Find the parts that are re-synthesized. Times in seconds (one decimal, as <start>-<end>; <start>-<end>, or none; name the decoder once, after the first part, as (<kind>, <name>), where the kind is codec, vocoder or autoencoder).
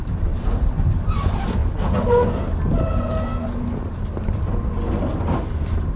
0.0-1.6 (vocoder, BigVGAN v2); 5.2-6.0